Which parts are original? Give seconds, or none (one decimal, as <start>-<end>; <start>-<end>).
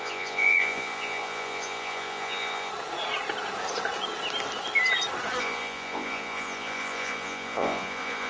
2.7-5.4